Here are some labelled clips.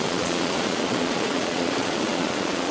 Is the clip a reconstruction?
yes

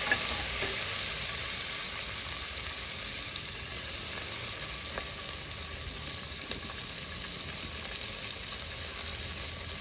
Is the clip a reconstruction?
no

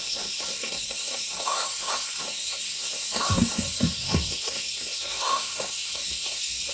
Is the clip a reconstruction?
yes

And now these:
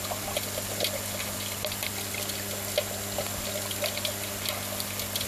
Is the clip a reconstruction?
no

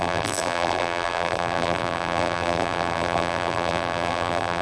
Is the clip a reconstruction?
yes